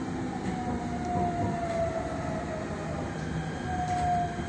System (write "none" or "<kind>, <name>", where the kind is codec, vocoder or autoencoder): none